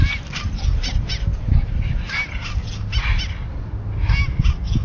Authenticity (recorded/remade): recorded